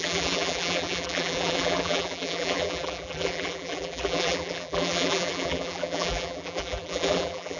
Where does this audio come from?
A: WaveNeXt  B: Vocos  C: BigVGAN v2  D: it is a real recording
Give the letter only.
C